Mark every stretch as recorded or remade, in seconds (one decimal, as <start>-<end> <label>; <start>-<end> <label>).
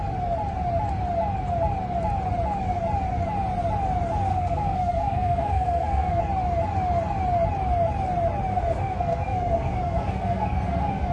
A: 0.0-4.3 recorded; 4.3-6.2 remade; 6.2-8.5 recorded; 8.5-11.1 remade